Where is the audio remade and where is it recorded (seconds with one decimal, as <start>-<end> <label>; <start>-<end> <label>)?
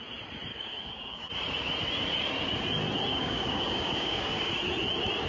0.0-0.5 recorded; 0.5-1.3 remade; 1.3-3.1 recorded; 3.1-4.5 remade; 4.5-5.3 recorded